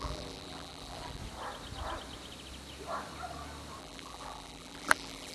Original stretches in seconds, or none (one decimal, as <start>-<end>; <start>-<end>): 1.2-3.8